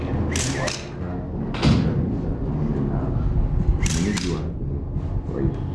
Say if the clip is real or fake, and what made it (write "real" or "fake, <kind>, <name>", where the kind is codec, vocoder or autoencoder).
real